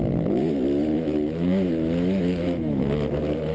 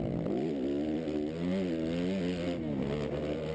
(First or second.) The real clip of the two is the second